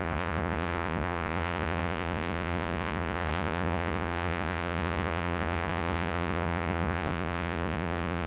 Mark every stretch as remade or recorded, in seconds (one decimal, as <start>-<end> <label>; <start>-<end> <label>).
0.0-8.3 remade